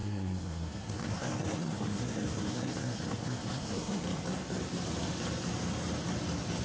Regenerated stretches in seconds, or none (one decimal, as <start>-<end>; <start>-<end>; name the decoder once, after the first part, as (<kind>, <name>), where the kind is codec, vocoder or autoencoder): 0.0-4.0 (codec, SNAC)